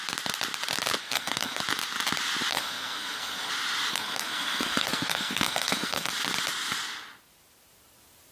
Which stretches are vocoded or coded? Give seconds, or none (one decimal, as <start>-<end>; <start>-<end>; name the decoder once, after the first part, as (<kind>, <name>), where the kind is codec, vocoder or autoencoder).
1.0-1.6 (codec, SNAC); 2.5-3.5; 3.9-6.1